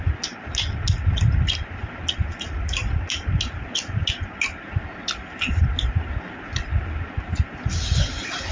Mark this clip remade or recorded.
recorded